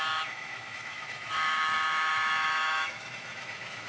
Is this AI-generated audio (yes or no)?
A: yes